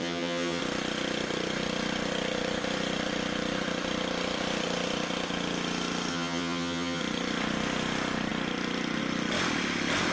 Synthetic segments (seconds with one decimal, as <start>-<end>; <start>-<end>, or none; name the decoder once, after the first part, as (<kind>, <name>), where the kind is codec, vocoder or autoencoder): 0.0-0.6 (vocoder, HiFi-GAN); 6.1-7.0